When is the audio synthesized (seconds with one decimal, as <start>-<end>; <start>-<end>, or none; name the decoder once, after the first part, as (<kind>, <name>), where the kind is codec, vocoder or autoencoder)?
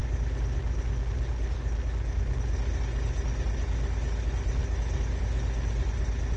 none